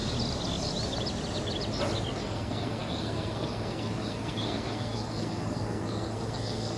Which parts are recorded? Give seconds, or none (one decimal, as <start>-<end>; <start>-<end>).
0.0-2.2